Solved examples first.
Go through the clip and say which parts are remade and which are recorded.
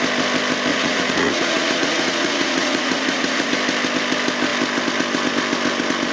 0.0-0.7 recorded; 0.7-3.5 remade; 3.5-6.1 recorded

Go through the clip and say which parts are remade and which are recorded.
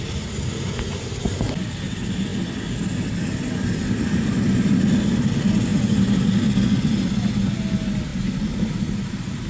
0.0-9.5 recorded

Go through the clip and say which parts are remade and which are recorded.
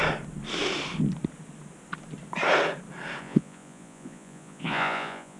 0.0-3.2 recorded; 3.2-5.4 remade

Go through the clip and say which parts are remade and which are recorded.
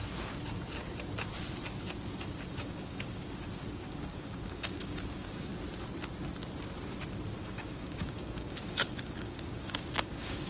0.0-2.5 recorded; 2.5-3.2 remade; 3.2-3.8 recorded; 3.8-5.5 remade; 5.5-7.4 recorded; 7.4-10.5 remade